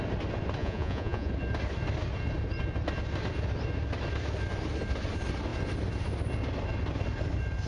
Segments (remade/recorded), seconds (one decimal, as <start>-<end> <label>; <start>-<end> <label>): 0.0-0.6 recorded; 0.6-1.3 remade; 1.3-7.7 recorded

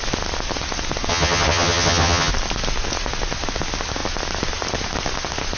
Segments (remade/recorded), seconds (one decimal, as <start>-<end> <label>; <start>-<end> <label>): 0.0-1.1 recorded; 1.1-2.3 remade; 2.3-5.6 recorded

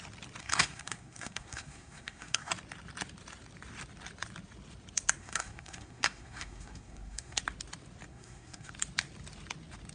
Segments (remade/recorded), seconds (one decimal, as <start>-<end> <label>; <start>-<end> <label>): 0.0-0.4 recorded; 0.4-2.5 remade; 2.5-5.2 recorded; 5.2-7.4 remade; 7.4-8.1 recorded; 8.1-8.7 remade; 8.7-9.9 recorded

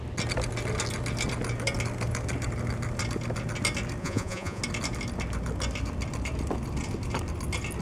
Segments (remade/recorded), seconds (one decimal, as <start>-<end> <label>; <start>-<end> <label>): 0.0-4.0 recorded; 4.0-4.6 remade; 4.6-7.8 recorded

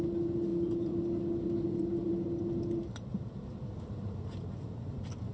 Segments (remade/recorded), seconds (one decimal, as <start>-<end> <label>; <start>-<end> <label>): 0.0-0.5 recorded; 0.5-1.2 remade; 1.2-2.0 recorded; 2.0-5.3 remade

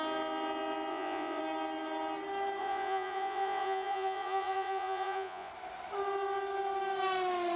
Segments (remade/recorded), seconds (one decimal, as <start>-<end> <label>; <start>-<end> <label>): 0.0-0.9 recorded; 0.9-1.4 remade; 1.4-2.6 recorded; 2.6-5.5 remade; 5.5-7.6 recorded